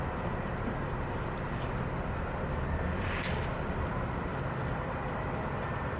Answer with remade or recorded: recorded